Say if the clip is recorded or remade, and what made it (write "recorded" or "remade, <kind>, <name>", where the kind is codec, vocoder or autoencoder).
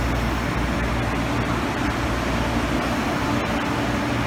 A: recorded